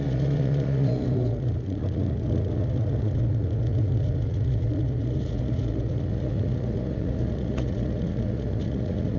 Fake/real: fake